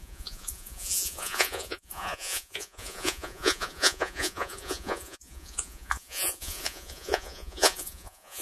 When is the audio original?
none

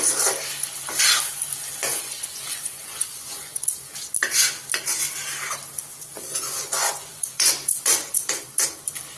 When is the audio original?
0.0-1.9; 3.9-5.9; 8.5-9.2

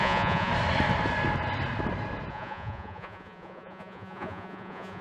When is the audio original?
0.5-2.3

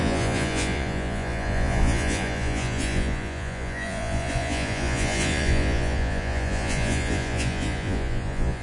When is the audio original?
none